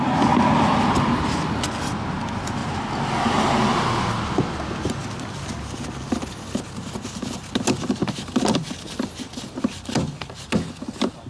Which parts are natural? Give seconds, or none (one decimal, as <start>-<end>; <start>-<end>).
0.0-11.3

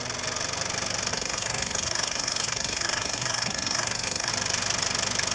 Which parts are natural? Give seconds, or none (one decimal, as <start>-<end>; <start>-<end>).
0.0-1.1; 4.3-5.3